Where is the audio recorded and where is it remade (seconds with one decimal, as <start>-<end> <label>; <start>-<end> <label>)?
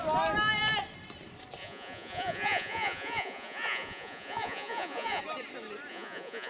0.0-1.6 recorded; 1.6-5.2 remade; 5.2-5.9 recorded; 5.9-6.5 remade